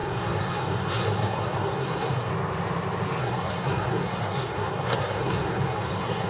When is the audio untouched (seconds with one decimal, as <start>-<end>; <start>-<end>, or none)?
2.3-3.2